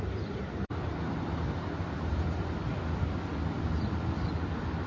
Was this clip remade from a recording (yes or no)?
yes